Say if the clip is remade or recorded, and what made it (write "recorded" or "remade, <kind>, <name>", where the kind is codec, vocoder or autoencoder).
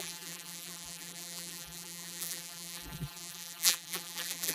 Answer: remade, vocoder, BigVGAN v2